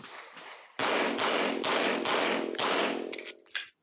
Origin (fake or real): real